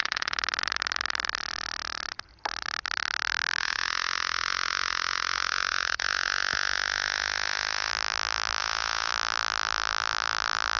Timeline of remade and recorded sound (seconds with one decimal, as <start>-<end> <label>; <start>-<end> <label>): 0.0-3.6 recorded; 3.6-7.9 remade; 7.9-8.6 recorded; 8.6-9.1 remade; 9.1-10.8 recorded